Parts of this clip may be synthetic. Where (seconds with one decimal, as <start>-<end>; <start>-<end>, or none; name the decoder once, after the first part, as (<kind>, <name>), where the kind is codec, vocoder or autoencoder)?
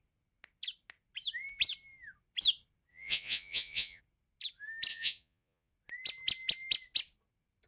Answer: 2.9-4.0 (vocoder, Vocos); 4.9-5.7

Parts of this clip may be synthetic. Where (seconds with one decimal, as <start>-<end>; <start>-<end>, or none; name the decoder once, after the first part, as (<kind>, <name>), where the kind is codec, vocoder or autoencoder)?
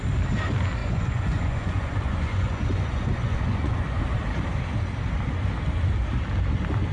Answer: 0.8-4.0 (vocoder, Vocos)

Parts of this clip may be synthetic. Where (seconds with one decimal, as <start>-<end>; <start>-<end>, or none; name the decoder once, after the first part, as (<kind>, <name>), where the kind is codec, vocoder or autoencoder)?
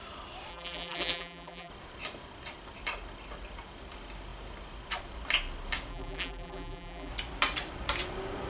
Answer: 0.5-1.7 (vocoder, BigVGAN v2); 5.9-7.1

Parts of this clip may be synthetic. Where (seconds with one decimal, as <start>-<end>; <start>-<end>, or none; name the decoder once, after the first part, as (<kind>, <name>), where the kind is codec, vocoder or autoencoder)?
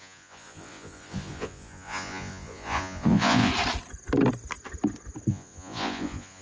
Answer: 0.0-3.5 (vocoder, Vocos); 5.3-6.4